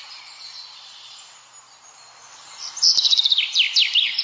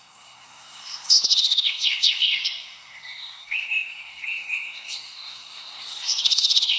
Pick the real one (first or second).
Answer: first